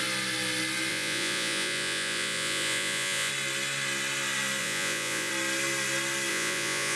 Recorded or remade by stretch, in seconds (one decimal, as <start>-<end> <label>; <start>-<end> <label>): 0.0-0.9 recorded; 0.9-3.3 remade; 3.3-4.6 recorded; 4.6-5.3 remade; 5.3-6.3 recorded; 6.3-7.0 remade